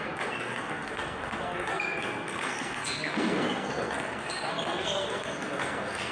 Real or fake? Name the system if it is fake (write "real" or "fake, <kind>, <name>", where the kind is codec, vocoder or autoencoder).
fake, codec, SNAC